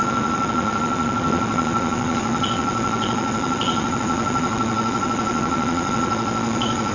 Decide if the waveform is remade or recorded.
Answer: remade